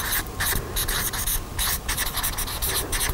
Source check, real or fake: real